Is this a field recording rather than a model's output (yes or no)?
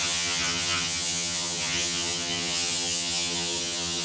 no